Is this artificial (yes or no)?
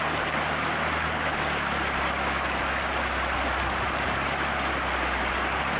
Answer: no